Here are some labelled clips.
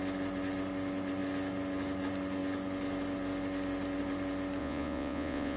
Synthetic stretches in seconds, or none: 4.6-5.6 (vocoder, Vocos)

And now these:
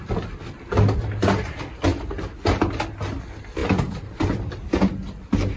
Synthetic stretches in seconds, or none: 3.6-4.9 (vocoder, BigVGAN v2)

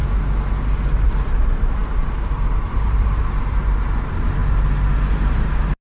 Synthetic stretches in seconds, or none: 1.0-4.4 (vocoder, BigVGAN v2); 5.3-5.8